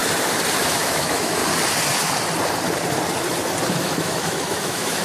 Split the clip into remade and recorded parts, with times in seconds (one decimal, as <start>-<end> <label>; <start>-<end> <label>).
0.0-0.6 recorded; 0.6-1.4 remade; 1.4-3.7 recorded; 3.7-5.0 remade